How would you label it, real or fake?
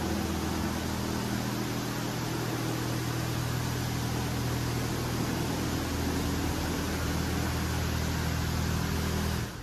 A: real